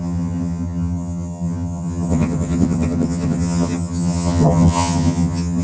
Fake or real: fake